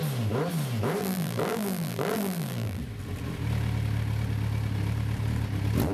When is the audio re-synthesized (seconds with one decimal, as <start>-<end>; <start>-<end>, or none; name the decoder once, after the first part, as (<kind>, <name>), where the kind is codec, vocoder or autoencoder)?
1.0-2.8 (vocoder, BigVGAN v2)